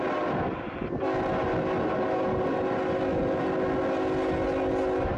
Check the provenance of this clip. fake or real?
real